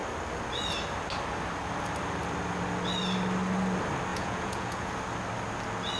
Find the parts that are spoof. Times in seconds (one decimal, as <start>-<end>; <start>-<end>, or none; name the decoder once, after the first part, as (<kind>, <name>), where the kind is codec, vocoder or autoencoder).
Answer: 4.1-4.9 (vocoder, Vocos)